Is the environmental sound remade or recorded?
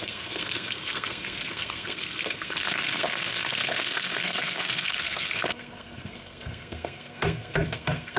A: remade